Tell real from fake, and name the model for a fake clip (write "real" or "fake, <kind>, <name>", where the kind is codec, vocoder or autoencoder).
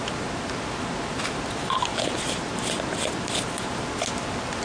real